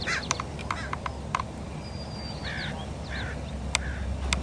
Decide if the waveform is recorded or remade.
recorded